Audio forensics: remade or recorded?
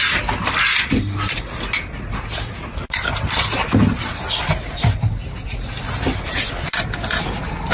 recorded